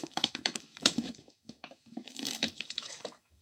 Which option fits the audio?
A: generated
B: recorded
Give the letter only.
A